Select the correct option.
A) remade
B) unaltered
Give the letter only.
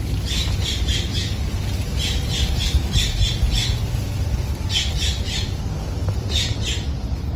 B